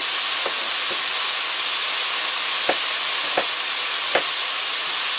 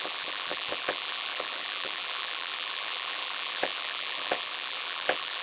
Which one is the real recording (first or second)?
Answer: first